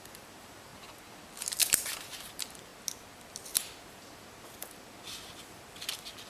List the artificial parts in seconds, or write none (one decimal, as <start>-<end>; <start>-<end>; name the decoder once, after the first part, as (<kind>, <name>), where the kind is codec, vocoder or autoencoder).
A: 0.0-0.7 (vocoder, BigVGAN v2); 1.7-2.7